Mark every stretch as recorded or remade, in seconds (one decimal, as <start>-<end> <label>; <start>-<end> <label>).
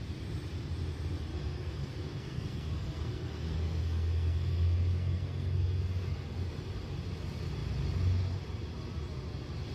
0.0-1.3 recorded; 1.3-6.6 remade; 6.6-9.7 recorded